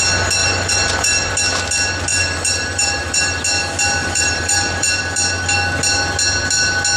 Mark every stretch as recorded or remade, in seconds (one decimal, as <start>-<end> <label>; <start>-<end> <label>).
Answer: 0.0-0.4 recorded; 0.4-1.3 remade; 1.3-2.1 recorded; 2.1-3.4 remade; 3.4-4.0 recorded; 4.0-5.0 remade; 5.0-7.0 recorded